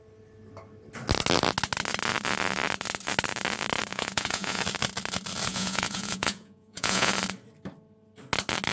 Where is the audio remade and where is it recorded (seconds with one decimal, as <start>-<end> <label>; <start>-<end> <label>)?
0.0-3.9 recorded; 3.9-4.6 remade; 4.6-5.5 recorded; 5.5-7.1 remade; 7.1-8.7 recorded